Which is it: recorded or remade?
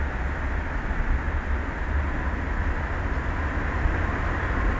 recorded